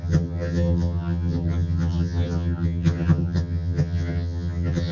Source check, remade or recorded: remade